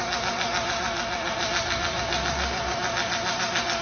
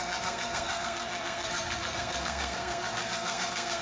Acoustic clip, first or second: first